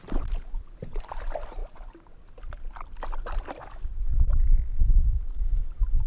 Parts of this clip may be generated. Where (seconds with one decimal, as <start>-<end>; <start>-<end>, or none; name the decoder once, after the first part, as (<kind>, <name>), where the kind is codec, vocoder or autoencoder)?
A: none